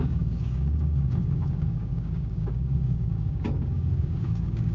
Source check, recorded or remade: remade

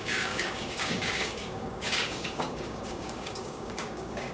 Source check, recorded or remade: remade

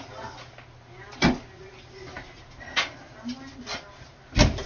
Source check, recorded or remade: recorded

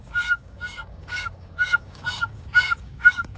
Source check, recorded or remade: remade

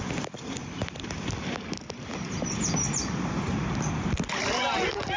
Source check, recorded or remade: recorded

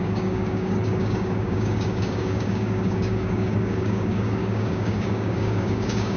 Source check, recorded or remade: remade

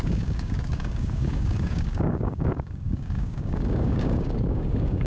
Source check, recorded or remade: remade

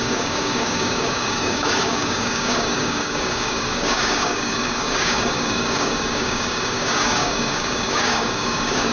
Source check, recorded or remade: remade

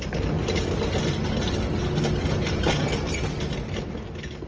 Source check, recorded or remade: recorded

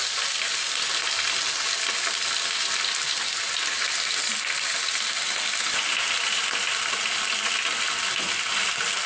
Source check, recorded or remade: recorded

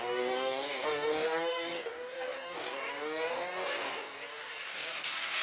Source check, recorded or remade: remade